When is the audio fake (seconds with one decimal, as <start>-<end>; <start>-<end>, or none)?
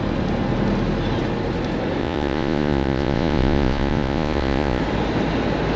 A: 2.0-4.8